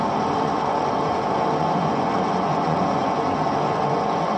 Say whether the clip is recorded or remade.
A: remade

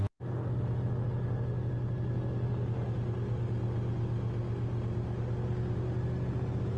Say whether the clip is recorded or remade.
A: recorded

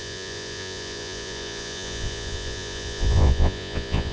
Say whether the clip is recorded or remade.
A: remade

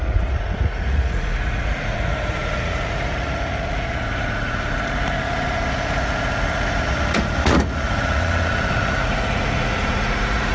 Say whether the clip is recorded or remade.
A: remade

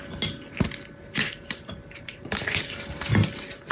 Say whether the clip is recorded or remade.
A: recorded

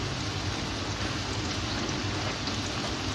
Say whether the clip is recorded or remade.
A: recorded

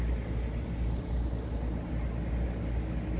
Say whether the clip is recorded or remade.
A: recorded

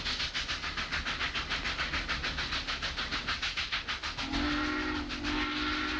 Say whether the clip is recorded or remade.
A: recorded